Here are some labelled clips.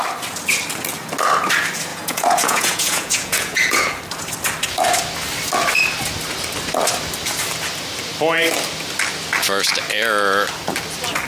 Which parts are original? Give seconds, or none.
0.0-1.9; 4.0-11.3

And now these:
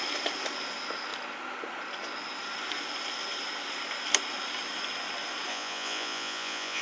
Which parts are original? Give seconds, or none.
0.0-5.5